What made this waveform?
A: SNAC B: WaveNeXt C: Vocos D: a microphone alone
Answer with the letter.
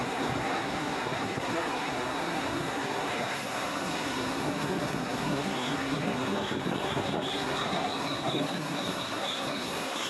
A